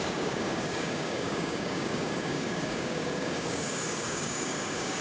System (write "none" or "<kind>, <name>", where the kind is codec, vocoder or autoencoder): codec, DAC